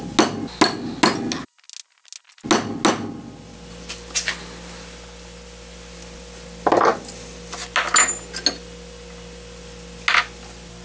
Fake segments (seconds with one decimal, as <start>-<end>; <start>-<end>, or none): none